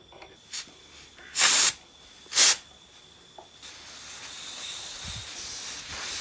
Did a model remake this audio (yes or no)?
no